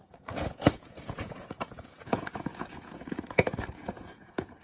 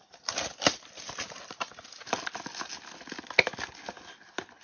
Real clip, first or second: second